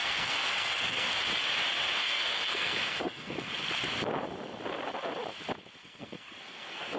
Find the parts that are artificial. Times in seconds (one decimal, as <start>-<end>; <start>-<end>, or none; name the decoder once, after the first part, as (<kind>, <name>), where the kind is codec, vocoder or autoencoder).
0.0-1.1 (codec, SNAC); 2.0-3.5; 5.8-7.0